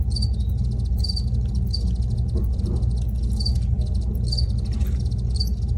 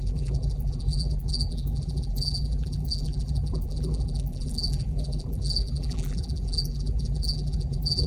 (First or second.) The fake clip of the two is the second